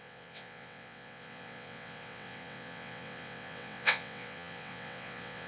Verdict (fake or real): fake